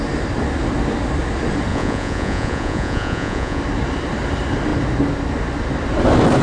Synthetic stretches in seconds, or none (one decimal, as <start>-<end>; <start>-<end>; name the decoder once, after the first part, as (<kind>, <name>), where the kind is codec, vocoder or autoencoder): 1.7-3.6 (vocoder, Vocos)

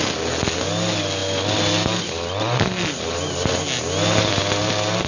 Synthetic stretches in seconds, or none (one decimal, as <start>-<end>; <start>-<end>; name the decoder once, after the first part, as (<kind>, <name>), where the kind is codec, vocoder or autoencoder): none

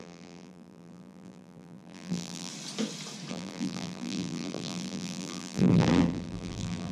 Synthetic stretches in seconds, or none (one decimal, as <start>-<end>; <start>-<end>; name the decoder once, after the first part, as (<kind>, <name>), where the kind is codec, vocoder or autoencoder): 0.0-2.5 (vocoder, BigVGAN v2); 3.3-6.9

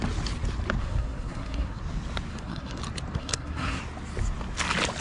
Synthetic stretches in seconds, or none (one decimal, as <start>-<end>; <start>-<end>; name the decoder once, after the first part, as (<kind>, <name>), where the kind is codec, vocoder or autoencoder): 0.8-1.8 (codec, SNAC); 2.3-2.8; 3.2-3.8

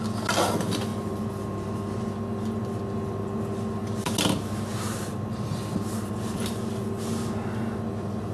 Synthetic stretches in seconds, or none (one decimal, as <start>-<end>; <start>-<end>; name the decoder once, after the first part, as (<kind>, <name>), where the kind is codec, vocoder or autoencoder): none